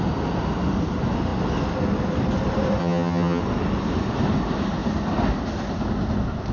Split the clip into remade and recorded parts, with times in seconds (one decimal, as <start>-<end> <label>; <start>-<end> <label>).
0.0-2.8 recorded; 2.8-3.4 remade; 3.4-6.5 recorded